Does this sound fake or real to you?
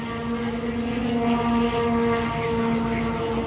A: real